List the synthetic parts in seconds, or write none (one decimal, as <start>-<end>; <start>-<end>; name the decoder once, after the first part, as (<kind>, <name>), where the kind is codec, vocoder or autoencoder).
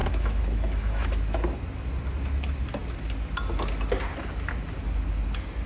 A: 0.0-1.4 (autoencoder, DAC-VAE)